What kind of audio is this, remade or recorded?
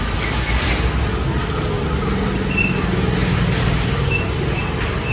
recorded